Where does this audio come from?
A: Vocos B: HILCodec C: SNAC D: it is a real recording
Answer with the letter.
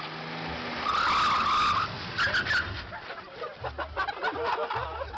D